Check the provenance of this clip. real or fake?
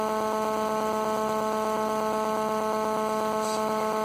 real